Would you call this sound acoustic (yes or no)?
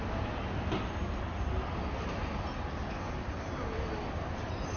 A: yes